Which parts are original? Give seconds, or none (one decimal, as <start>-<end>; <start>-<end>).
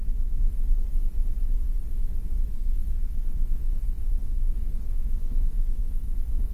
0.0-2.5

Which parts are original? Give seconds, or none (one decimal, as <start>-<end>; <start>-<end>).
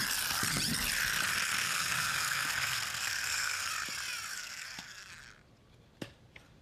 0.0-1.6; 3.7-4.3; 5.1-6.6